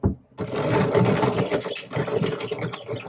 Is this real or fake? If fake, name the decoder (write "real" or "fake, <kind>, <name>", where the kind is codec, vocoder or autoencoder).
real